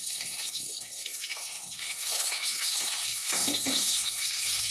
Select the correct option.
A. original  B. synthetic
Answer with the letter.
B